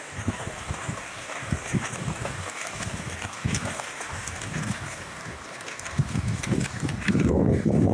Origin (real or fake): fake